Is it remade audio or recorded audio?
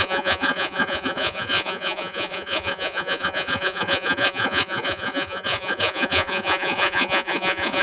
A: remade